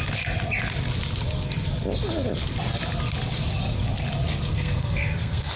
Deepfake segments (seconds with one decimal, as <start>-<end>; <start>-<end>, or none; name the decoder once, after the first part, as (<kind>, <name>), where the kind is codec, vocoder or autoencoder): 4.5-5.6 (codec, SNAC)